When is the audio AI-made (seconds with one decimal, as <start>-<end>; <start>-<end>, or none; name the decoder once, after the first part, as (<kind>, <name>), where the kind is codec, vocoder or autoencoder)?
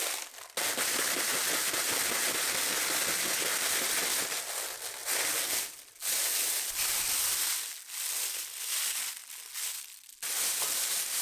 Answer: none